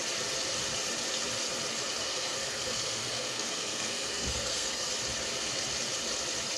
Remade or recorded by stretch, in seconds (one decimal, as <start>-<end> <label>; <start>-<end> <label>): 0.0-2.0 recorded; 2.0-4.9 remade; 4.9-6.6 recorded